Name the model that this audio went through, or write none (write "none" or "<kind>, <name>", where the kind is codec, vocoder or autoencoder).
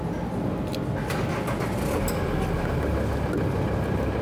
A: none